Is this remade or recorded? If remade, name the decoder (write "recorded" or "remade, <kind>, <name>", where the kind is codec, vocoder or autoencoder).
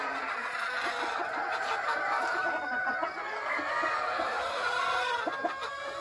recorded